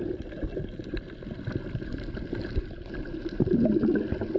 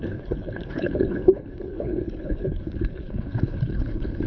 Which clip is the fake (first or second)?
second